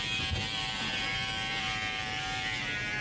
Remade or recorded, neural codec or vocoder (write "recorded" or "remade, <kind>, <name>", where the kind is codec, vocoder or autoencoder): remade, vocoder, BigVGAN v2